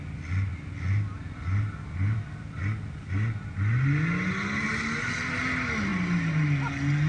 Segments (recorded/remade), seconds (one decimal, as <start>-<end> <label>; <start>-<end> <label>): 0.0-7.1 recorded